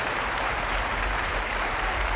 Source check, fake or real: fake